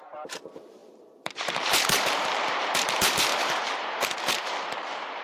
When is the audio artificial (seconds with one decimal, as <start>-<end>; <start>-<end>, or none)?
0.0-5.2